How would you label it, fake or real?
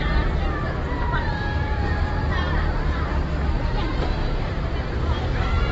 fake